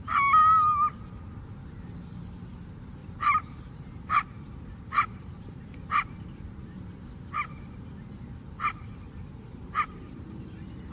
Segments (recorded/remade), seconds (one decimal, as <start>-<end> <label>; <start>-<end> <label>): 0.0-3.0 recorded; 3.0-7.9 remade; 7.9-10.9 recorded